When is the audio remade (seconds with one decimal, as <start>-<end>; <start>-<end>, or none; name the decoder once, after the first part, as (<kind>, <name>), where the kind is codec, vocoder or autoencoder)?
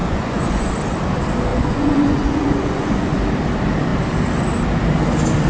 0.0-0.7 (vocoder, Vocos); 1.5-3.2